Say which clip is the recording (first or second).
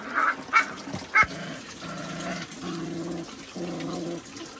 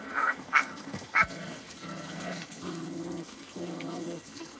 first